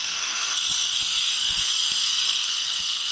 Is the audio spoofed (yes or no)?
yes